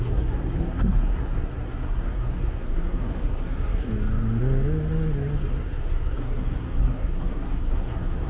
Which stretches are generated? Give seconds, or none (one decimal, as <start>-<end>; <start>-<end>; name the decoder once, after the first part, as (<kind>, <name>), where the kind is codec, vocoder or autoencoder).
0.0-3.9 (codec, SNAC); 5.5-8.3